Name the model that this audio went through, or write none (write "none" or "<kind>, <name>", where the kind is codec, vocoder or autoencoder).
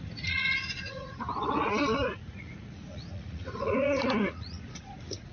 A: vocoder, Vocos